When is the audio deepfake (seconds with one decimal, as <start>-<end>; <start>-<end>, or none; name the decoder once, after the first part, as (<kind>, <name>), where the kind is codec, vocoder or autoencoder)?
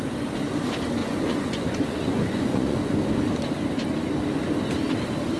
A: 1.0-2.9 (vocoder, Vocos)